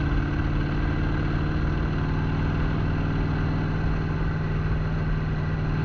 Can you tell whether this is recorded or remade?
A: recorded